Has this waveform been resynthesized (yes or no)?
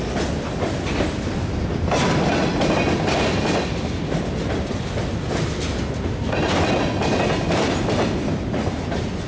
no